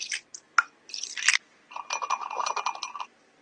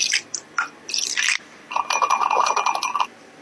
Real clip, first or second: first